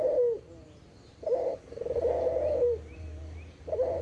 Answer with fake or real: fake